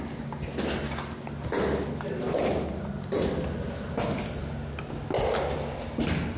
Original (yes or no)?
yes